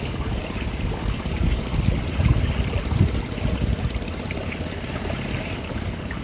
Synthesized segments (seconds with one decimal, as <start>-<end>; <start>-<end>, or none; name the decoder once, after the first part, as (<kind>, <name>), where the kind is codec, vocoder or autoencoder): 0.0-0.4 (codec, DAC); 1.0-1.7; 5.4-6.2